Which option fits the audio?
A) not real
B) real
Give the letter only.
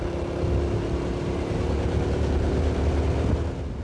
B